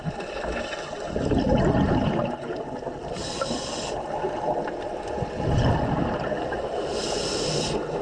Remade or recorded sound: recorded